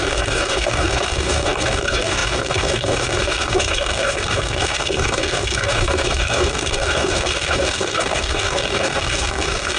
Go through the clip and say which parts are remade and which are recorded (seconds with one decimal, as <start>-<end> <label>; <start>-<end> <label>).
0.0-9.8 remade